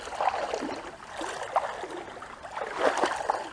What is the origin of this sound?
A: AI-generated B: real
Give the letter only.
B